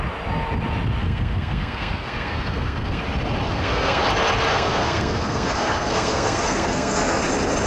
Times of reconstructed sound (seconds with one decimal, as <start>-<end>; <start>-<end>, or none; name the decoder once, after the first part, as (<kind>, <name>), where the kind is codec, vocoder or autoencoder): 1.0-3.0 (codec, SNAC); 3.5-4.0; 4.5-7.2